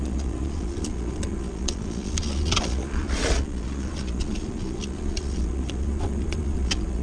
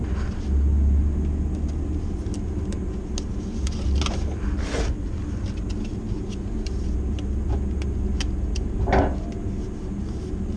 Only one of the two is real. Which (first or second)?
second